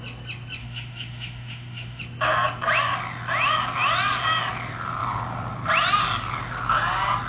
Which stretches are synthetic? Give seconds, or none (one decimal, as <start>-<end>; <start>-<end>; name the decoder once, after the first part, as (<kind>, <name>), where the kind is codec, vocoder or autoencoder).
0.6-2.0 (autoencoder, DAC-VAE)